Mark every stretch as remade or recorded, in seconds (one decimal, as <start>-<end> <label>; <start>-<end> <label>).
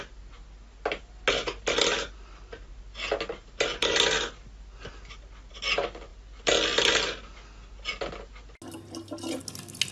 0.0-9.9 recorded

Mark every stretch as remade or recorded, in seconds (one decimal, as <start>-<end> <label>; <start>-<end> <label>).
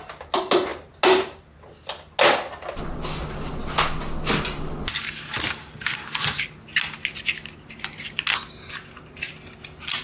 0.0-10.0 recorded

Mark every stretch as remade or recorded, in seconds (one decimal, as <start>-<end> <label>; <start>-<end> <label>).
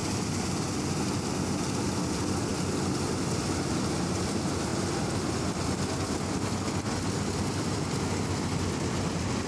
0.0-9.5 recorded